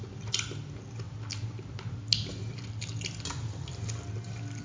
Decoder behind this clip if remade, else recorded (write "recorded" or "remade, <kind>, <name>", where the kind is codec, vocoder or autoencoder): recorded